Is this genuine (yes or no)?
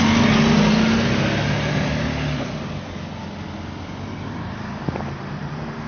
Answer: yes